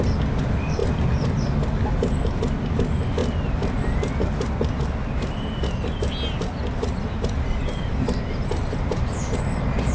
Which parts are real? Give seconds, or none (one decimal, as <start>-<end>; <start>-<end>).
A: 0.0-9.9